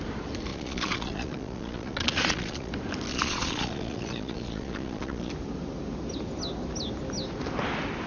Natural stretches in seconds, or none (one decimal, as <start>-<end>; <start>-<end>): 0.0-0.5; 2.7-3.1; 5.3-8.1